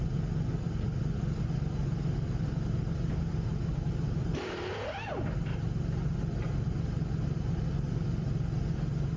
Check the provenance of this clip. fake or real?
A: real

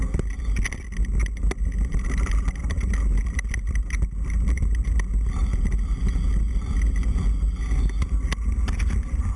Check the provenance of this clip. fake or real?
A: real